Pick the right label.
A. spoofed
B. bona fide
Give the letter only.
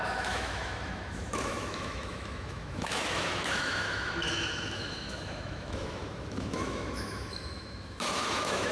A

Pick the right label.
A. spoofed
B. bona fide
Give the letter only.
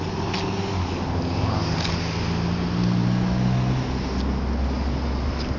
B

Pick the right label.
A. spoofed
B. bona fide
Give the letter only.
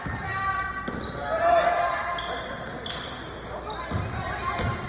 B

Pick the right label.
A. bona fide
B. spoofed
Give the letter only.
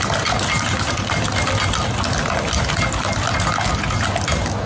A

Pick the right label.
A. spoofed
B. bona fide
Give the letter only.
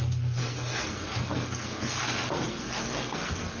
A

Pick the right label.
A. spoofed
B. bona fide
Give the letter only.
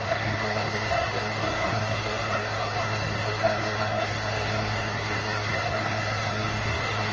A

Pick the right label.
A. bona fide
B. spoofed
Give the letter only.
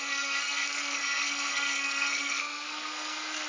B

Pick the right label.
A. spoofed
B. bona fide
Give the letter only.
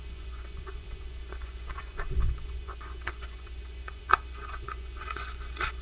A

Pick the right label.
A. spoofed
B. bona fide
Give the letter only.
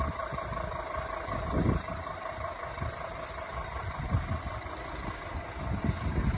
B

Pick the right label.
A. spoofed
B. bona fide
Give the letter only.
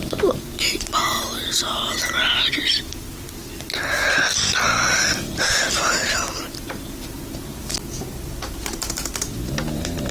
B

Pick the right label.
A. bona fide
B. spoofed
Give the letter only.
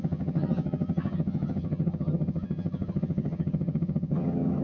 B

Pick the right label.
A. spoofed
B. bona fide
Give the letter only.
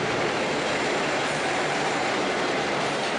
A